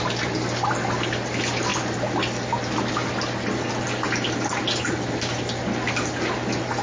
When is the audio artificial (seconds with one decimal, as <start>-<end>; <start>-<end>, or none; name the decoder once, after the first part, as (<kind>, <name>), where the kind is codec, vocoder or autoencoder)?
none